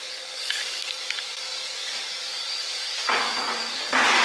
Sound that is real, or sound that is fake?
fake